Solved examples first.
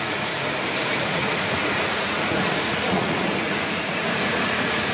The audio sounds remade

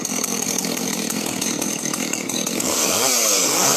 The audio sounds remade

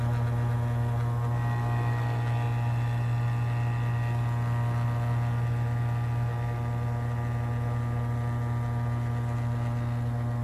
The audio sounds recorded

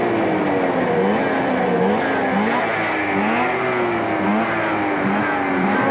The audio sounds recorded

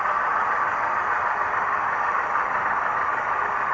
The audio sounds recorded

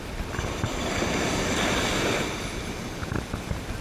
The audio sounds recorded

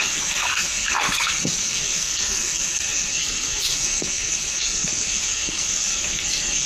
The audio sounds remade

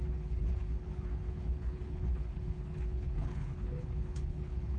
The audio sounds remade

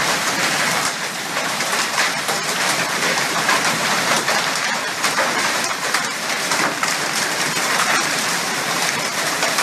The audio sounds remade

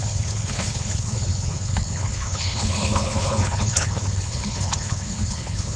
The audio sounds remade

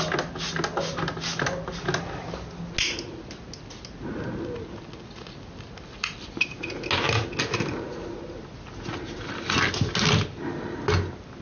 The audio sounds recorded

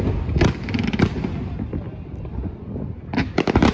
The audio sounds recorded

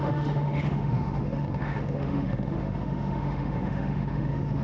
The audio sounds remade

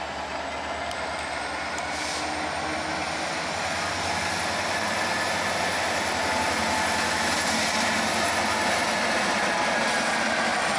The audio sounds recorded